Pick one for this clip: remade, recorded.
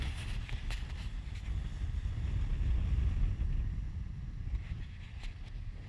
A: recorded